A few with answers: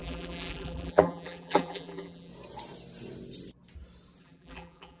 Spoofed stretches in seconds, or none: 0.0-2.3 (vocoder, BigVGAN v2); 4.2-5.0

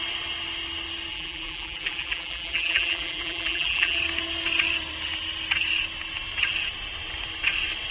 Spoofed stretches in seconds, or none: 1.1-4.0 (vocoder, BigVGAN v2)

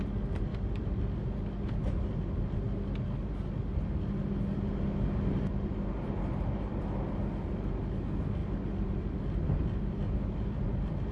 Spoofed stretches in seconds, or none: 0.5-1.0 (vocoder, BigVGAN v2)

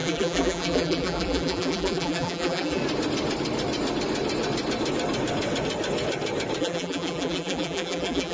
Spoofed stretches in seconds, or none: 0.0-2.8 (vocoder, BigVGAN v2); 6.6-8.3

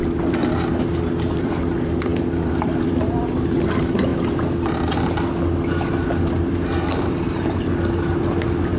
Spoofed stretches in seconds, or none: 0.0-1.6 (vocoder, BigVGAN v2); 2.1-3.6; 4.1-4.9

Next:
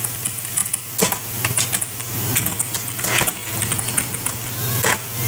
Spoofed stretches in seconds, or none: none

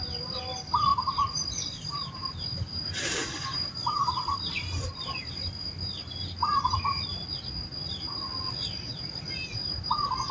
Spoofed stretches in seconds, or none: 0.9-2.3 (vocoder, BigVGAN v2); 3.2-7.0